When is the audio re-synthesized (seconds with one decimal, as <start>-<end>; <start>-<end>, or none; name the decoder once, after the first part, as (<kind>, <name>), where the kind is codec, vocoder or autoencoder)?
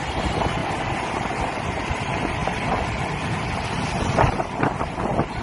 0.6-1.8 (vocoder, BigVGAN v2); 2.4-3.8